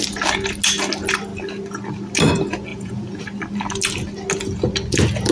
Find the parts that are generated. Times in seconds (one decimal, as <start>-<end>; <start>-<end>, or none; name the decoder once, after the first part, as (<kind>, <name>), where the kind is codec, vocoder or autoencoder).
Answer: 2.7-3.2 (vocoder, Vocos)